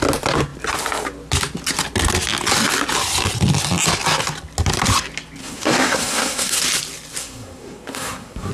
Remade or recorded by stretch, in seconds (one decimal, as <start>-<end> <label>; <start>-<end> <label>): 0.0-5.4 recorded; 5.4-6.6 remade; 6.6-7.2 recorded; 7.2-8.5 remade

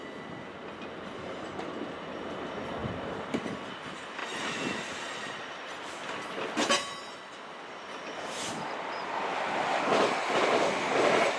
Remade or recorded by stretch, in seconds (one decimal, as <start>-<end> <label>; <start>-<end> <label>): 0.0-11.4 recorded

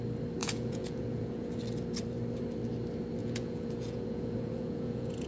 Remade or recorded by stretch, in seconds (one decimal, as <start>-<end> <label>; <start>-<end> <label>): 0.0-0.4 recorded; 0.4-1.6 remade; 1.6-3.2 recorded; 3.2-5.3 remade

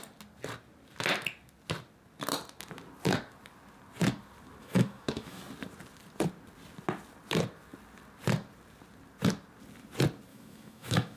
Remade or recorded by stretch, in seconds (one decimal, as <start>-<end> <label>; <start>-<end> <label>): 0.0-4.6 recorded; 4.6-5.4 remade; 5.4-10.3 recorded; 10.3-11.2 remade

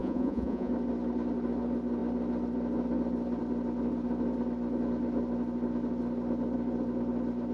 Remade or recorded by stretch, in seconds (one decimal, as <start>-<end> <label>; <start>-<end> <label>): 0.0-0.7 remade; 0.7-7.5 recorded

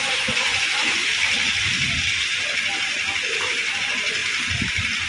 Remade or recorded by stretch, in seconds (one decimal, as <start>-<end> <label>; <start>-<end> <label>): 0.0-1.0 remade; 1.0-3.8 recorded; 3.8-4.2 remade; 4.2-5.1 recorded